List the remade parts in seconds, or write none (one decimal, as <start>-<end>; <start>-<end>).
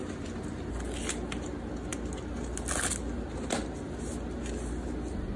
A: 0.0-0.5